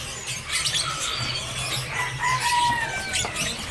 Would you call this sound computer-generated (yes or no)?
no